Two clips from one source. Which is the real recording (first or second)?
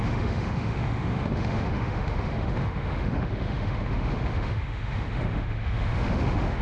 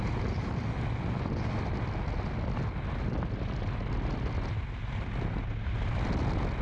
second